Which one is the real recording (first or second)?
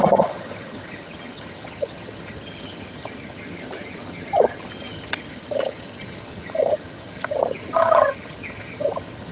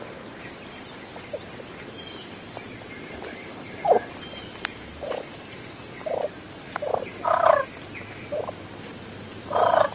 second